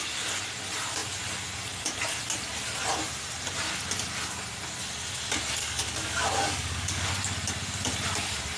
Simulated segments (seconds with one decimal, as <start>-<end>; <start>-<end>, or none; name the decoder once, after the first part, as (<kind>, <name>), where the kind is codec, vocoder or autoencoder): 5.6-7.1 (codec, DAC)